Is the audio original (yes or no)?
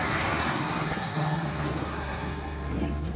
no